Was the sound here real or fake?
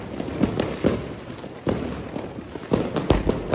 real